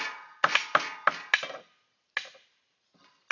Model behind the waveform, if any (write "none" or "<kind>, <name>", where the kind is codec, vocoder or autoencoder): none